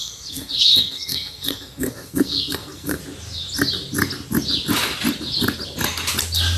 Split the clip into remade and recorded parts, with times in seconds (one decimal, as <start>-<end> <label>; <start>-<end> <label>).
0.0-3.0 remade; 3.0-6.6 recorded